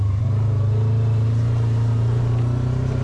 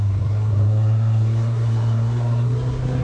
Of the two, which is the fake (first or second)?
second